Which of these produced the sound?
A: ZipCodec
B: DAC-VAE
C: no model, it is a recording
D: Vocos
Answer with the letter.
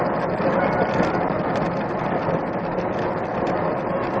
C